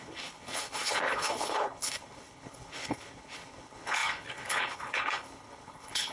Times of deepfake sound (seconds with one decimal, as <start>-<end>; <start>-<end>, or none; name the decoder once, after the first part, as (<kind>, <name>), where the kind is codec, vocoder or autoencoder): 0.0-6.1 (codec, HILCodec)